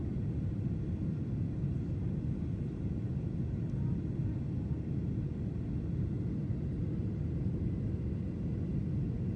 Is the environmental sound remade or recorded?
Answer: recorded